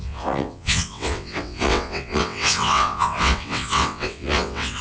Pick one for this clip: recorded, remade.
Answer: remade